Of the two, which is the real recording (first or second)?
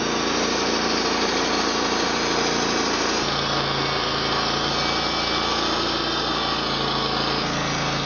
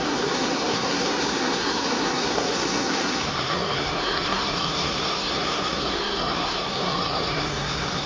first